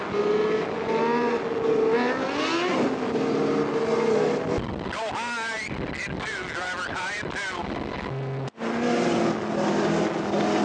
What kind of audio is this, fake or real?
real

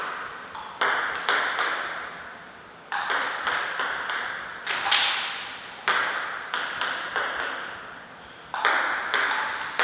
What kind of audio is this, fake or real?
real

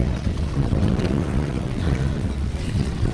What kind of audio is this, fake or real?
fake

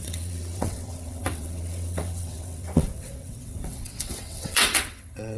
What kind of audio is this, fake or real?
fake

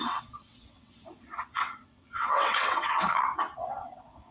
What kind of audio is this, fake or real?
fake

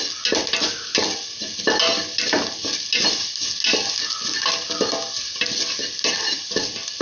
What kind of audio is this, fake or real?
real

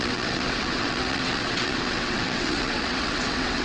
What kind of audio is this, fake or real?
fake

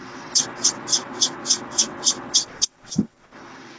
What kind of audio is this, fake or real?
fake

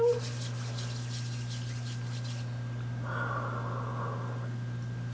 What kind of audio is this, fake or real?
real